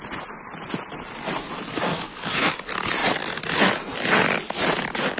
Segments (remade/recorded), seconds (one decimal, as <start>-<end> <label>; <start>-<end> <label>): 0.0-1.9 recorded; 1.9-2.5 remade; 2.5-5.2 recorded